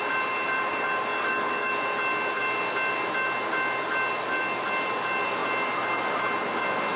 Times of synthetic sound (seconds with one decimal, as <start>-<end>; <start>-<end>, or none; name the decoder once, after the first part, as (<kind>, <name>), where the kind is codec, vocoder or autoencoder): 1.1-1.7 (codec, DAC)